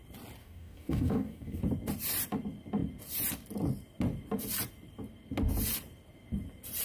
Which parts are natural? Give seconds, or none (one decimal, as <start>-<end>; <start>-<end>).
0.0-0.4; 1.6-6.8